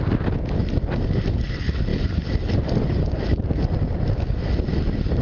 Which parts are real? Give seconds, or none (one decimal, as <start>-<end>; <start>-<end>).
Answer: 0.0-5.2